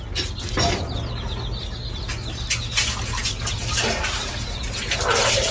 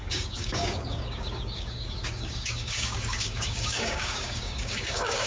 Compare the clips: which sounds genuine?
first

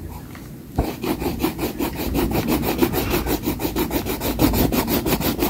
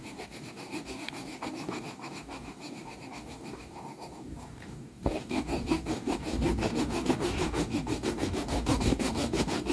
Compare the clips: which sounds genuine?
first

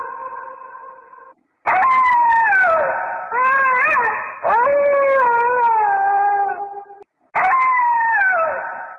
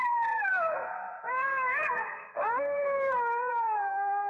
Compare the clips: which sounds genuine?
first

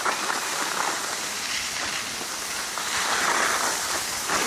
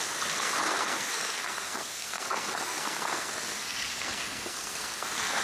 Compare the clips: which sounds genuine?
first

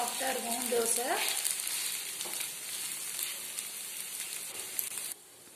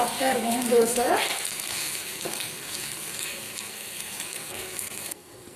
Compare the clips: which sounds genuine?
first